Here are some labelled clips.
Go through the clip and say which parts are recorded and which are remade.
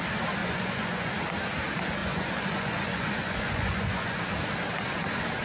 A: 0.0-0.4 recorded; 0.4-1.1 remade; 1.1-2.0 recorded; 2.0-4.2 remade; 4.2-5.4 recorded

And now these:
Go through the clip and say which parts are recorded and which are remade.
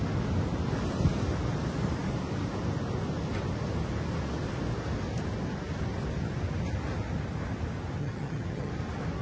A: 0.0-8.0 recorded; 8.0-8.7 remade; 8.7-9.2 recorded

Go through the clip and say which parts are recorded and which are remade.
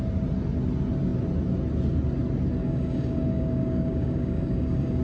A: 0.0-2.6 recorded; 2.6-5.0 remade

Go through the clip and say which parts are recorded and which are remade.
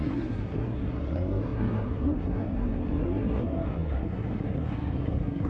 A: 0.0-5.5 remade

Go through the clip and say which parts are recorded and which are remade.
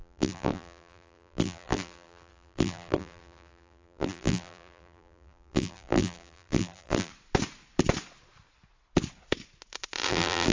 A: 0.0-7.1 remade; 7.1-10.1 recorded; 10.1-10.5 remade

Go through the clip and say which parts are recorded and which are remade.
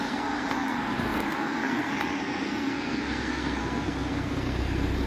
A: 0.0-5.1 remade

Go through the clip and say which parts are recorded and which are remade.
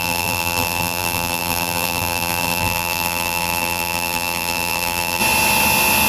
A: 0.0-5.2 remade; 5.2-6.1 recorded